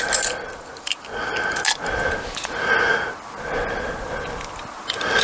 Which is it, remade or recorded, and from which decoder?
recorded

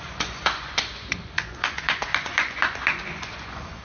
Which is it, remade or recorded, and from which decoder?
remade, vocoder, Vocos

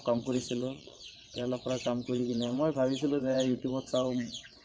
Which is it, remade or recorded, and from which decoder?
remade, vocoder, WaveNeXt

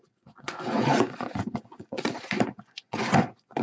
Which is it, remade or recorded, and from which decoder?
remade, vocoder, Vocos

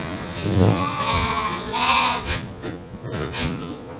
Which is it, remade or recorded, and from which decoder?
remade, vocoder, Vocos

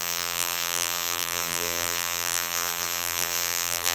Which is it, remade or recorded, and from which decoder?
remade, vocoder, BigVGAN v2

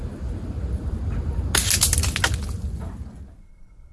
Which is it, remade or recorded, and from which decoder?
recorded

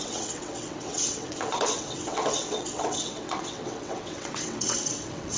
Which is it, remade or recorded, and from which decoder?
remade, vocoder, WaveNeXt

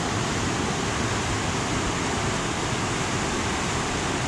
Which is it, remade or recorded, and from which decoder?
recorded